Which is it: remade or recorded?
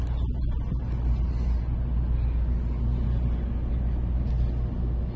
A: recorded